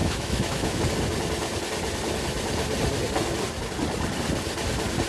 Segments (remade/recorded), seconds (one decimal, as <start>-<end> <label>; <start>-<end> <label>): 0.0-0.8 remade; 0.8-5.1 recorded